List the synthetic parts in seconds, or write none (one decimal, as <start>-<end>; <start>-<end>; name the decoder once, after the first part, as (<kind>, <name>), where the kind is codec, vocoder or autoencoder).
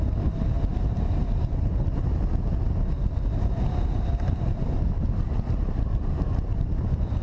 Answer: none